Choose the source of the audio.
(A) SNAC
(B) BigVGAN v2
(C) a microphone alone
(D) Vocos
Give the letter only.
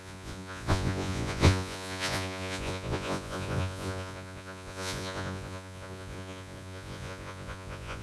D